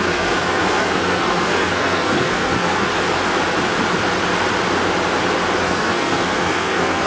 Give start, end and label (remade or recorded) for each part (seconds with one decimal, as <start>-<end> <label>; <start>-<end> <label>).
0.0-2.9 remade; 2.9-5.6 recorded; 5.6-7.1 remade